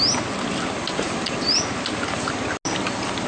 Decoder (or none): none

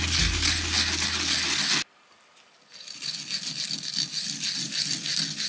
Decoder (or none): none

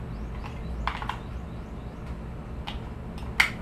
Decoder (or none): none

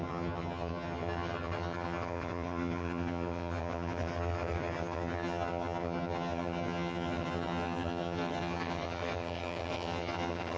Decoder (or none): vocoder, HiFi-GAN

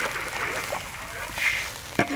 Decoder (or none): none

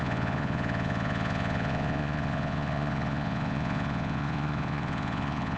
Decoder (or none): vocoder, Vocos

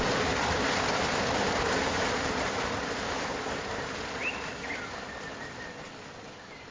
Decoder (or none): none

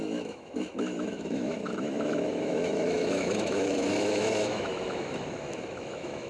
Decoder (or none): autoencoder, DAC-VAE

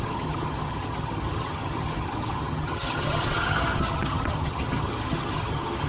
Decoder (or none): vocoder, HiFi-GAN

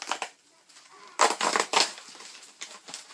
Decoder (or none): none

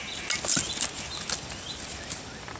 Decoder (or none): none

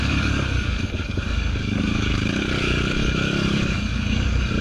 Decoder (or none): codec, DAC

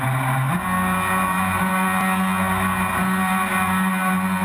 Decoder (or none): none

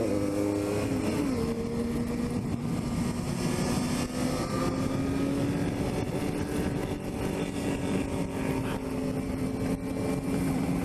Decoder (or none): none